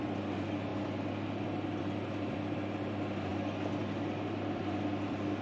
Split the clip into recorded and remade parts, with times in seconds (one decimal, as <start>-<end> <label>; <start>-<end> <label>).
0.0-0.7 remade; 0.7-1.8 recorded; 1.8-3.3 remade; 3.3-3.8 recorded; 3.8-5.4 remade